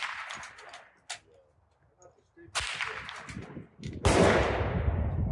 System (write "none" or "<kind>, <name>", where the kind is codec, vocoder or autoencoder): none